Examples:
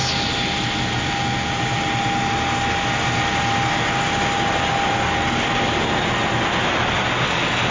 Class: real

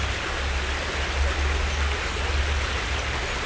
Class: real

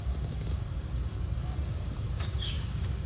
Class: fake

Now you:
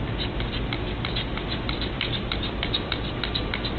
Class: real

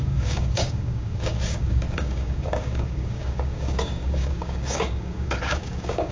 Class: fake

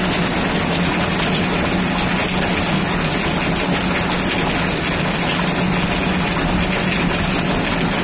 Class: real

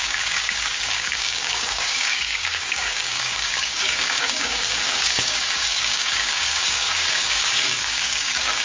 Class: fake